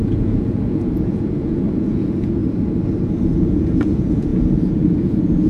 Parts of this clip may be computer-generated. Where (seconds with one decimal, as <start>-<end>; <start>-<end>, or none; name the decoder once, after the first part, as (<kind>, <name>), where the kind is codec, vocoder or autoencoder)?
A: 0.0-2.4 (vocoder, Vocos); 3.2-5.5